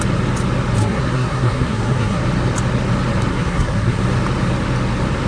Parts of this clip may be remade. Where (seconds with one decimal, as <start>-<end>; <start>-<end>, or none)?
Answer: 0.8-2.2; 3.3-4.0